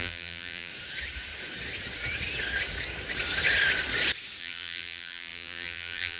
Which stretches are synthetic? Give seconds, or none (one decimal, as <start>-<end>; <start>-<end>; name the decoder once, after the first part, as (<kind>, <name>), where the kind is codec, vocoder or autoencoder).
0.0-0.7 (vocoder, BigVGAN v2); 4.4-6.2